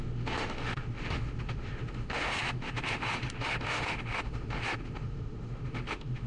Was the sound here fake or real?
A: fake